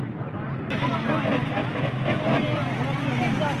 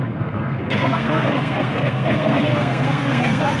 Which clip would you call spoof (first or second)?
second